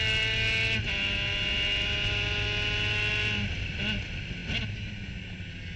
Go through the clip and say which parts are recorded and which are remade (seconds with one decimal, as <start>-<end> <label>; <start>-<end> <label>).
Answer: 0.0-5.8 recorded